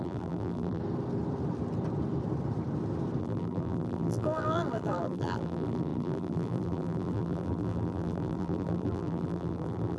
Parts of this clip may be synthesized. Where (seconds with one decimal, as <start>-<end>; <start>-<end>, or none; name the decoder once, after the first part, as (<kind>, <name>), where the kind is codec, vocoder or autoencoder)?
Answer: 0.0-0.8 (vocoder, BigVGAN v2); 3.2-10.0